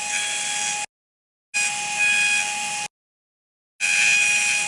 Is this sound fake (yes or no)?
no